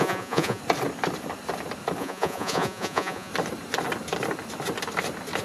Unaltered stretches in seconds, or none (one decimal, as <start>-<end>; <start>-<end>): 0.6-2.0; 3.3-5.4